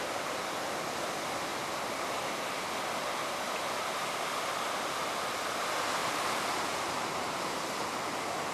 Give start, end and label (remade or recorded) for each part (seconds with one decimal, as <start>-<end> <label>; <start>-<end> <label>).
0.0-6.0 recorded; 6.0-8.0 remade; 8.0-8.5 recorded